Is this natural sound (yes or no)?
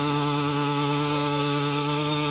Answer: no